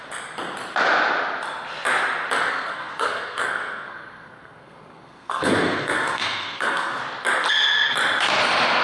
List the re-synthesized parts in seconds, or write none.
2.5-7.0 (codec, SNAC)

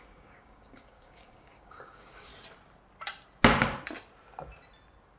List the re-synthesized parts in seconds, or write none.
0.0-2.3 (codec, DAC)

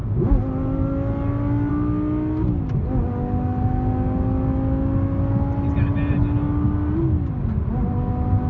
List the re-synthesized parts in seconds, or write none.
none

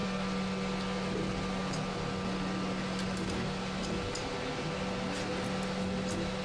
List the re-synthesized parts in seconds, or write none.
none

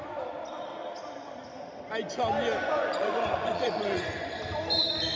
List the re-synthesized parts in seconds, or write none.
2.6-4.3 (vocoder, Vocos)

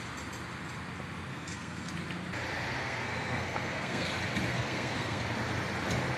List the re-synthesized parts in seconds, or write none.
1.3-1.9 (codec, SNAC); 2.8-4.1; 4.5-5.2